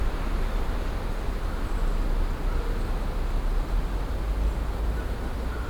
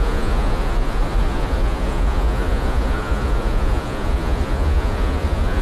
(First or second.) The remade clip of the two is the second